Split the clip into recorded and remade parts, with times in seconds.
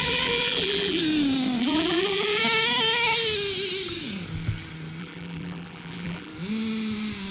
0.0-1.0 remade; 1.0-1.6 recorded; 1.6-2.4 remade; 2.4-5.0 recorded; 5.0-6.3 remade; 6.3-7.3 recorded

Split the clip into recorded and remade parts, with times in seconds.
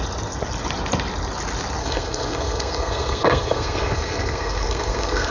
0.0-1.8 recorded; 1.8-5.3 remade